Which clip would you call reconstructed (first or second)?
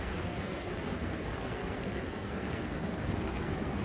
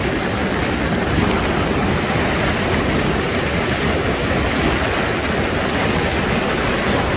first